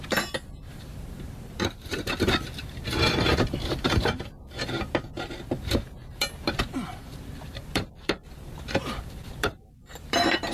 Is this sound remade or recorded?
remade